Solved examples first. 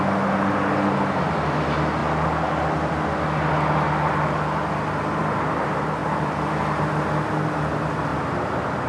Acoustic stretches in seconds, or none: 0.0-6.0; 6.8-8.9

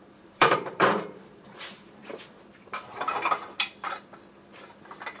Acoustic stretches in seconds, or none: 2.0-5.2

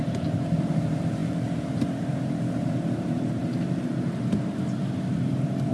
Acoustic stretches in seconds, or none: none

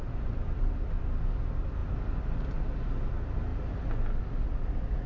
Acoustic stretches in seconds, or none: 0.0-1.8; 3.1-5.1